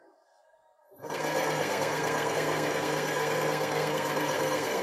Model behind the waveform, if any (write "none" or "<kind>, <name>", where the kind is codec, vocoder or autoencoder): codec, SNAC